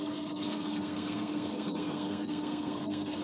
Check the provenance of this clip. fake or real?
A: fake